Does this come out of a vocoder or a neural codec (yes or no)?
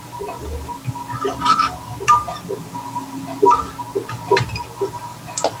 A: no